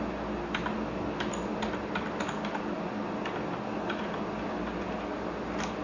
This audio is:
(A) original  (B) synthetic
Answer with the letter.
A